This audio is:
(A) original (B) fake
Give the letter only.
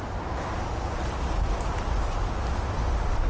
A